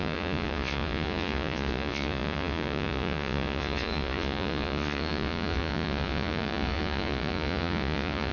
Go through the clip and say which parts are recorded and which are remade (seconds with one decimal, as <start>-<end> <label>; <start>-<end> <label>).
0.0-8.3 remade